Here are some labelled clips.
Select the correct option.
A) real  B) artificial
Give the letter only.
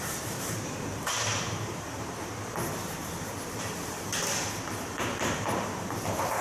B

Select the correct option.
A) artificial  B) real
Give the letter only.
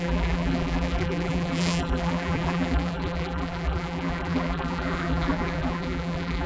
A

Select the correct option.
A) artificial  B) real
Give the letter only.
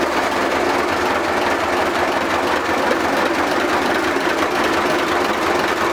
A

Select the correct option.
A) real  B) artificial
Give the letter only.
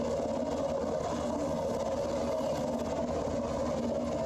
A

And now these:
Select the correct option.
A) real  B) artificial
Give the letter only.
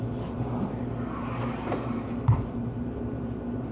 B